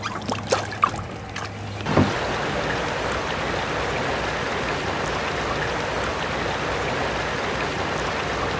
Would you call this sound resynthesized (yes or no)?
no